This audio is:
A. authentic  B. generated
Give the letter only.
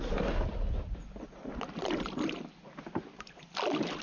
A